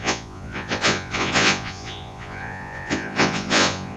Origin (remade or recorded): remade